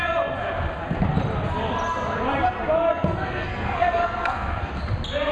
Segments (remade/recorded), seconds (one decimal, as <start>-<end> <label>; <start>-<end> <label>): 0.0-2.9 recorded; 2.9-4.7 remade; 4.7-5.3 recorded